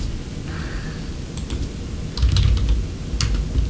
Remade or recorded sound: recorded